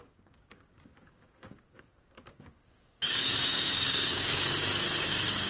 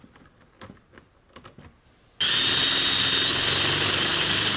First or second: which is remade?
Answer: first